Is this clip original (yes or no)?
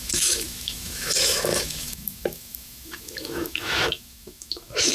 no